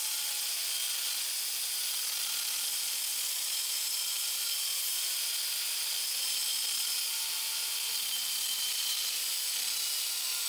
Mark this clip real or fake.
real